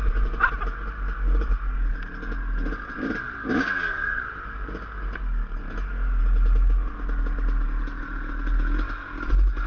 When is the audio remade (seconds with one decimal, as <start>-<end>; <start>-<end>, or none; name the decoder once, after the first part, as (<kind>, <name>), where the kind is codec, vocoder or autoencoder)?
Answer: none